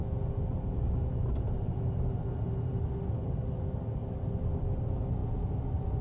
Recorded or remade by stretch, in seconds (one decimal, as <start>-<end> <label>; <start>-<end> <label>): 0.0-6.0 recorded